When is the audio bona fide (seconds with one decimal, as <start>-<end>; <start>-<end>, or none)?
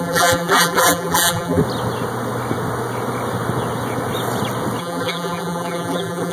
1.6-4.8